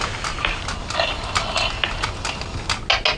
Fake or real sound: real